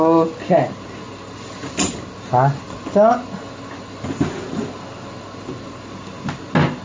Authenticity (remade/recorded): recorded